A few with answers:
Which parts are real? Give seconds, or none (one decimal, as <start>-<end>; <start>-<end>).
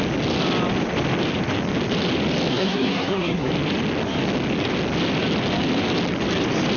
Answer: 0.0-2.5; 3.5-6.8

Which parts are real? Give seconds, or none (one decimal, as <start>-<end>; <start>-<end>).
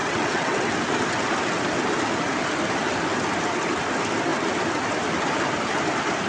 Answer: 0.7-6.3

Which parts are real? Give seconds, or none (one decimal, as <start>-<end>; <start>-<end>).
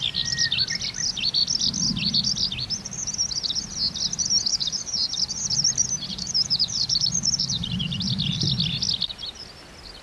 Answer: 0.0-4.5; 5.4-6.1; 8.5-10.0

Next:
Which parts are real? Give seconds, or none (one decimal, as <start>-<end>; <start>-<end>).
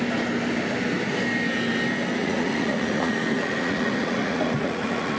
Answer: 0.0-2.2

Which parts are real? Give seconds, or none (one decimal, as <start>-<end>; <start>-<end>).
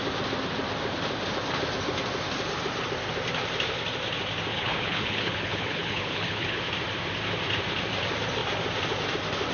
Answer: 0.0-4.5; 6.6-9.5